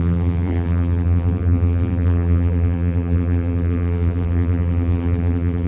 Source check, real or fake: fake